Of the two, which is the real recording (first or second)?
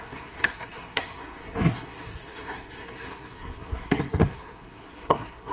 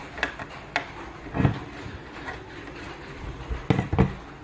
second